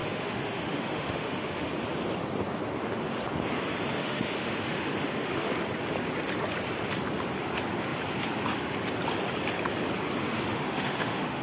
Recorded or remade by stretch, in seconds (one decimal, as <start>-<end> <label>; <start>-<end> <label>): 0.0-1.7 remade; 1.7-4.0 recorded; 4.0-5.5 remade; 5.5-10.2 recorded; 10.2-11.4 remade